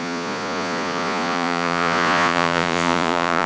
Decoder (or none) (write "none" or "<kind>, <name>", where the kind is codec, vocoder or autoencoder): vocoder, Vocos